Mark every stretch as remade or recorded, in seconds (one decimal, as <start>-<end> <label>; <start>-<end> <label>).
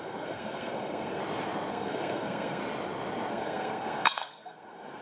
0.0-1.2 remade; 1.2-1.7 recorded; 1.7-2.6 remade; 2.6-3.3 recorded; 3.3-5.0 remade